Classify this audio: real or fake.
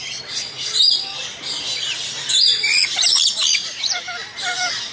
real